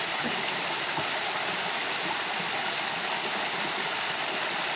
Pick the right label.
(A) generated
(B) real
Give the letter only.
B